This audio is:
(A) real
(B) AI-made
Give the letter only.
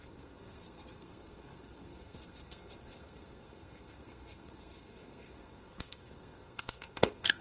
B